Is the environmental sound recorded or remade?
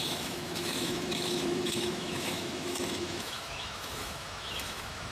remade